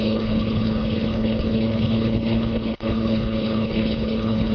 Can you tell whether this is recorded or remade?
remade